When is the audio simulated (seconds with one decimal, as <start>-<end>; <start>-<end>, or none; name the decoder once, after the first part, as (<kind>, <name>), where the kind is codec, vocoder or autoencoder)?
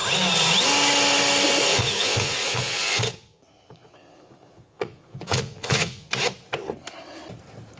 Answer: 1.7-6.1 (vocoder, Vocos)